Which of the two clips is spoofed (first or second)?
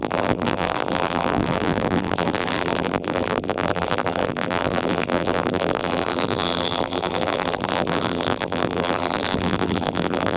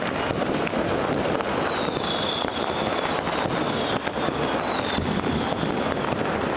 first